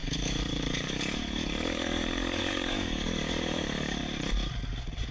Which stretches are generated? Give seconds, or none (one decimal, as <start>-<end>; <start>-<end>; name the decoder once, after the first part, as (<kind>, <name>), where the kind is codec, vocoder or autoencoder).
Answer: 0.0-4.0 (codec, DAC)